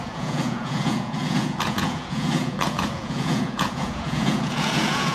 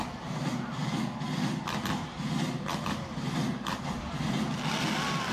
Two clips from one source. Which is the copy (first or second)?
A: first